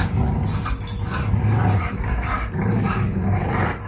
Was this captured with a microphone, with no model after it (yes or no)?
yes